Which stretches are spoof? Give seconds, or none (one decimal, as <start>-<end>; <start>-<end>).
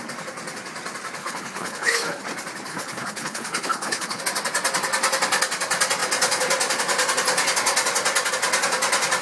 1.2-2.2; 2.7-4.2